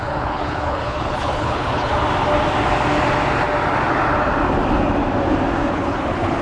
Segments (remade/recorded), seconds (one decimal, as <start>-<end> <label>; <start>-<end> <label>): 0.0-1.9 remade; 1.9-5.7 recorded; 5.7-6.4 remade